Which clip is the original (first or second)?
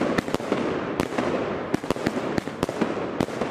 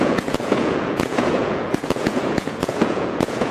first